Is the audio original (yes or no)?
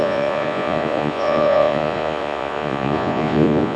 no